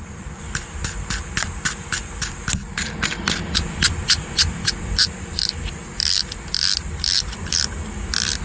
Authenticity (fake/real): fake